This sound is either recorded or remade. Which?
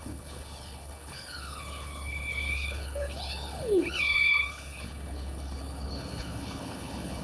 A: remade